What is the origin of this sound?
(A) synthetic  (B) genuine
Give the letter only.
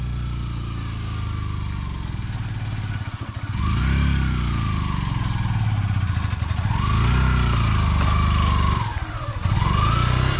B